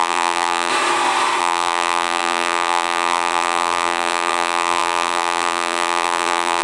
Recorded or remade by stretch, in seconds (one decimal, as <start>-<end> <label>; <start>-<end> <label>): 0.0-0.7 remade; 0.7-1.4 recorded; 1.4-6.6 remade